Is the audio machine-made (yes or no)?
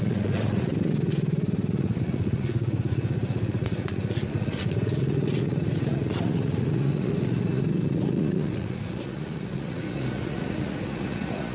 yes